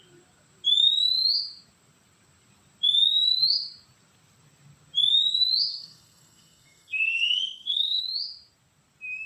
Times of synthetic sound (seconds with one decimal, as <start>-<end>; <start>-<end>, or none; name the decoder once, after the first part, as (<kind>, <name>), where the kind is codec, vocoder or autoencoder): 5.7-8.0 (codec, SNAC)